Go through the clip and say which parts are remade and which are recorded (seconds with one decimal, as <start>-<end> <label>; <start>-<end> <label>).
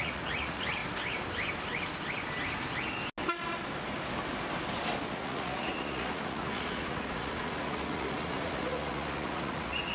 0.0-0.8 remade; 0.8-5.1 recorded; 5.1-9.9 remade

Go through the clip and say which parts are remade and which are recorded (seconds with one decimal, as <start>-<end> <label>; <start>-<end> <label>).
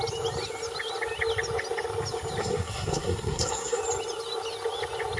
0.0-2.4 recorded; 2.4-3.8 remade; 3.8-5.2 recorded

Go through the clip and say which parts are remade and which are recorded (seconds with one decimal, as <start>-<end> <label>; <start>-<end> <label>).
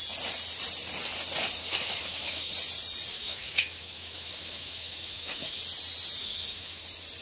0.0-1.6 recorded; 1.6-2.5 remade; 2.5-3.1 recorded; 3.1-5.6 remade; 5.6-6.2 recorded; 6.2-6.8 remade; 6.8-7.2 recorded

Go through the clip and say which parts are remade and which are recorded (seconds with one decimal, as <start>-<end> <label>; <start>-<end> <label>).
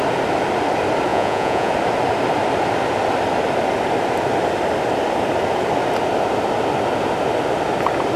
0.0-1.1 recorded; 1.1-1.7 remade; 1.7-8.2 recorded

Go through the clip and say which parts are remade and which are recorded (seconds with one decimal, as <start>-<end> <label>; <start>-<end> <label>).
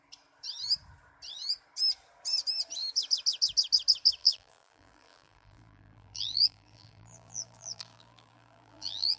0.0-4.2 recorded; 4.2-9.2 remade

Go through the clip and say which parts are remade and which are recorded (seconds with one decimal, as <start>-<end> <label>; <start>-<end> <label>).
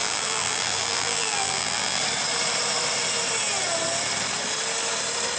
0.0-2.0 remade; 2.0-5.4 recorded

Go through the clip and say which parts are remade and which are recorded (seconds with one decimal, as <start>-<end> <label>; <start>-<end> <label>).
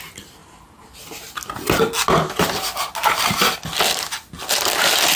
0.0-5.2 recorded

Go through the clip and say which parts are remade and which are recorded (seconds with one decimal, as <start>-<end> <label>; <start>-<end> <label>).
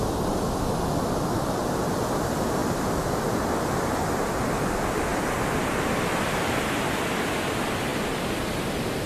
0.0-2.6 recorded; 2.6-3.2 remade; 3.2-5.1 recorded; 5.1-7.3 remade; 7.3-9.1 recorded